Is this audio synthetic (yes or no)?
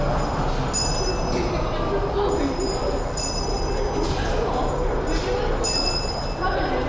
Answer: no